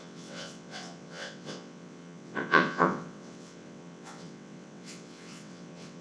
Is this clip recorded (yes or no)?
no